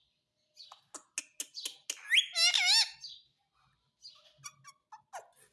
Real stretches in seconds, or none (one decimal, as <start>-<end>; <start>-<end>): 0.0-5.5